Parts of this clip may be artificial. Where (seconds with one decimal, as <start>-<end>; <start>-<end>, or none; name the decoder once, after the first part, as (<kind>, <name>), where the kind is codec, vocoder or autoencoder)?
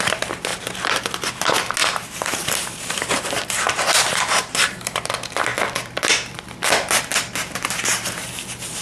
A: 0.5-1.0 (vocoder, BigVGAN v2); 1.8-5.0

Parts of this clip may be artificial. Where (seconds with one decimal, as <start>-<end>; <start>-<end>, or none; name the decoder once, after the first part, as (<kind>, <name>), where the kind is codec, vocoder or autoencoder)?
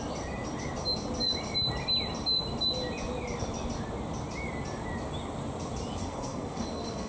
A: 6.0-7.1 (codec, SNAC)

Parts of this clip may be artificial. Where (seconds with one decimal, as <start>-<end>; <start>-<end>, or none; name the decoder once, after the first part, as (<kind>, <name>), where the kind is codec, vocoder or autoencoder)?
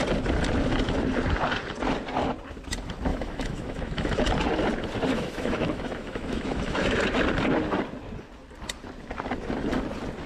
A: 3.1-4.2 (autoencoder, DAC-VAE); 5.1-7.0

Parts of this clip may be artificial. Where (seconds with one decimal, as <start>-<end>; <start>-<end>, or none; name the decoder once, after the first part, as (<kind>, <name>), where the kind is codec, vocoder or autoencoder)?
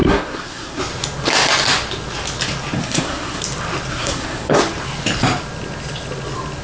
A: 0.0-0.8 (codec, SNAC); 2.8-3.4; 3.9-4.6